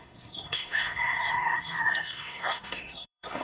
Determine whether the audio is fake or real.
fake